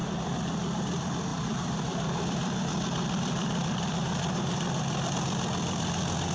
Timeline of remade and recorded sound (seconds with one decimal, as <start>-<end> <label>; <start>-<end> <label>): 0.0-1.3 recorded; 1.3-5.1 remade; 5.1-6.3 recorded